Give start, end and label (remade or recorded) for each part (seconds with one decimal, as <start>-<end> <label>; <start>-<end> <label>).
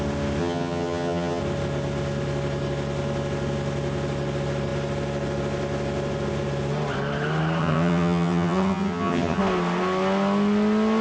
0.0-0.4 recorded; 0.4-1.4 remade; 1.4-7.6 recorded; 7.6-9.4 remade; 9.4-11.0 recorded